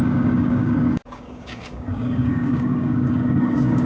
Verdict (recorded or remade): remade